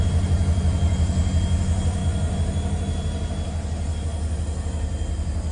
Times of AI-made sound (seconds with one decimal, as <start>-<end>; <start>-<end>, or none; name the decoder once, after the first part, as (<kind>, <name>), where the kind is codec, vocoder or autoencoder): none